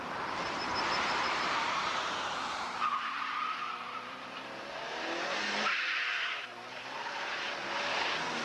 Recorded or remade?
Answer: remade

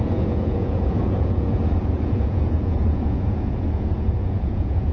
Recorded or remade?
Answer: remade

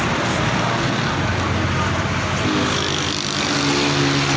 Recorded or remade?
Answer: recorded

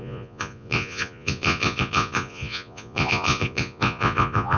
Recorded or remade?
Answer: remade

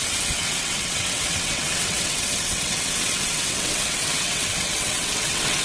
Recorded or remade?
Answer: remade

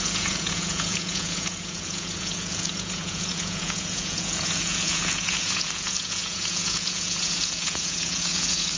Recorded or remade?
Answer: remade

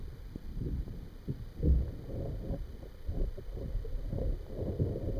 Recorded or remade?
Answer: recorded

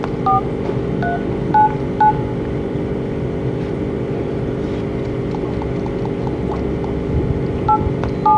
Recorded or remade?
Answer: recorded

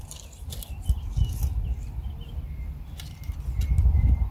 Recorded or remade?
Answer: recorded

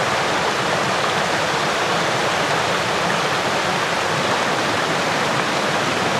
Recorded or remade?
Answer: recorded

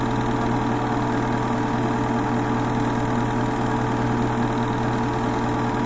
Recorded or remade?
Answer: recorded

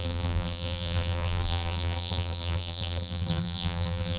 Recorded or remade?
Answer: remade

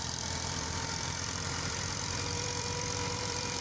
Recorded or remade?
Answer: remade